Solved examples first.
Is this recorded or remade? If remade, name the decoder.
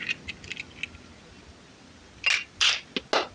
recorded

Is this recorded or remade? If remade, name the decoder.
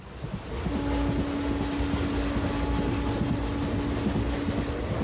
recorded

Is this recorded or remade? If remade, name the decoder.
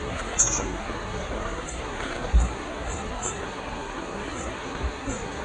remade, codec, SNAC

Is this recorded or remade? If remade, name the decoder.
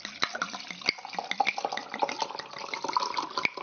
recorded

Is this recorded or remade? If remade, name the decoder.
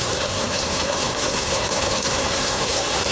remade, codec, SNAC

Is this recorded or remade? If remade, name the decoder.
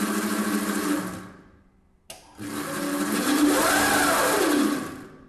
recorded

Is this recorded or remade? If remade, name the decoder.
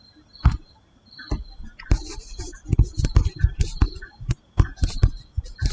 recorded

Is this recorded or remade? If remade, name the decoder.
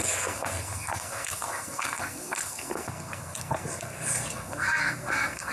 remade, codec, SNAC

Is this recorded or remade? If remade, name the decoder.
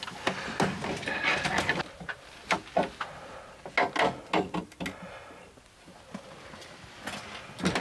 recorded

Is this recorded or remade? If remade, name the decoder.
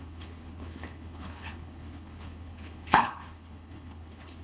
remade, codec, HILCodec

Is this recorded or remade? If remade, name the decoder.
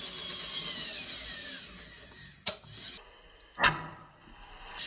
recorded